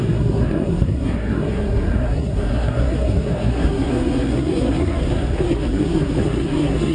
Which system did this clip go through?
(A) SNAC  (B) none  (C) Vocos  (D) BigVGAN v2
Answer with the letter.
A